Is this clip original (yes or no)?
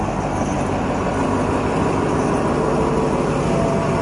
yes